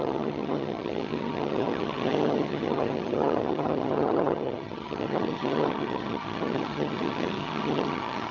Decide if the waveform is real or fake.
fake